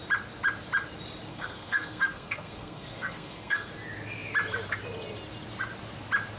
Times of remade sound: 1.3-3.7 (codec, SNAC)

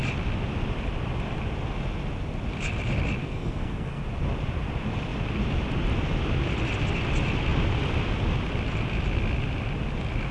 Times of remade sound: 3.2-4.0 (codec, SNAC)

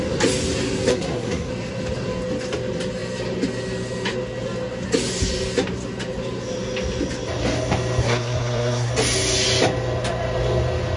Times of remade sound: 0.9-1.5 (codec, SNAC); 8.0-8.9

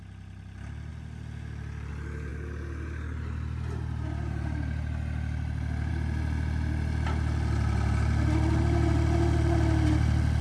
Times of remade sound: none

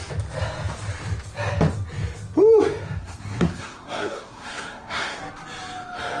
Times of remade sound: 3.0-5.2 (codec, SNAC)

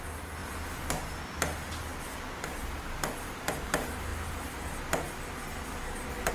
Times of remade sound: none

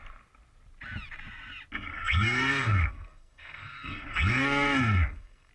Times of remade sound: 1.9-5.5 (codec, SNAC)